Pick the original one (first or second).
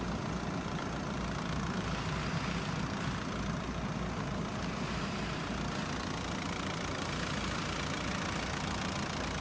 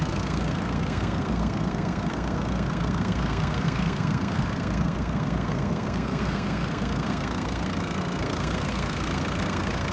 first